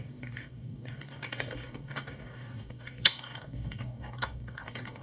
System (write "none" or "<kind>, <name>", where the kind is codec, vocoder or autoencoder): codec, DAC